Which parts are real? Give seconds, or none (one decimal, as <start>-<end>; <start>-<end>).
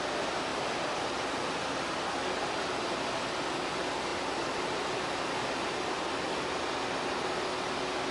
0.0-0.5; 2.7-4.1; 5.2-8.1